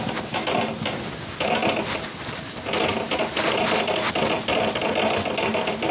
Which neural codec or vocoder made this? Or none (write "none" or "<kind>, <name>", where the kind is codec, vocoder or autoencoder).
none